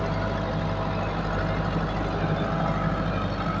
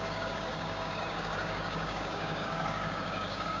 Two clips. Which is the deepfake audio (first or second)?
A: second